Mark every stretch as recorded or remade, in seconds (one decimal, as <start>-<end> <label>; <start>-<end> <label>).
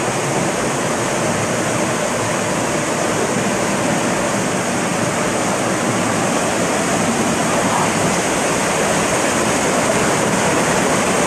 0.0-11.3 recorded